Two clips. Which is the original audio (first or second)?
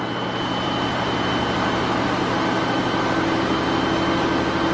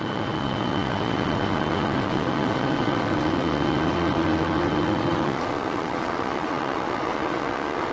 first